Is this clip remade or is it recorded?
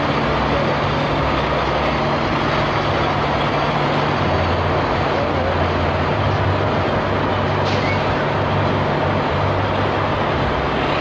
recorded